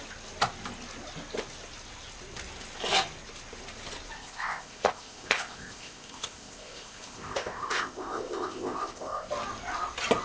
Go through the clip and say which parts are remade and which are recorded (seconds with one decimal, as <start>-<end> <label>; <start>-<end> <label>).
0.0-4.2 recorded; 4.2-9.3 remade; 9.3-10.2 recorded